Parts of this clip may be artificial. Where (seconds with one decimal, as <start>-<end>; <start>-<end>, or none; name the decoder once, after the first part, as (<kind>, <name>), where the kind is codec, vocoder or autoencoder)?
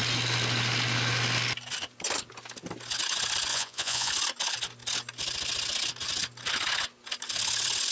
3.5-4.1 (vocoder, Vocos)